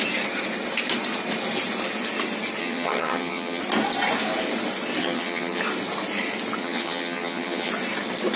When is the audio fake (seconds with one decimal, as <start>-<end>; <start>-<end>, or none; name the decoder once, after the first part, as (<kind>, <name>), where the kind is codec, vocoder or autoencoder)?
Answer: 2.6-3.6 (vocoder, HiFi-GAN); 5.0-5.6; 6.6-7.7